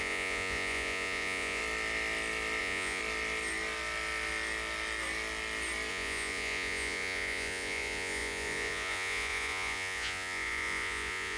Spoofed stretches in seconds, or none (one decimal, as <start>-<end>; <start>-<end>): 0.0-1.6; 2.6-3.0; 5.9-11.4